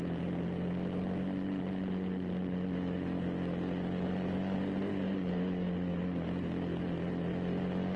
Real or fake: real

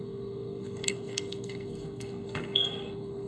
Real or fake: fake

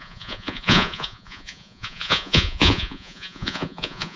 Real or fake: fake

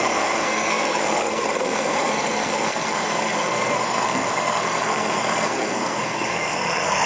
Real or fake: fake